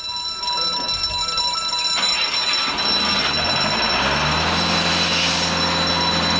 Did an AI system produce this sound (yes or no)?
no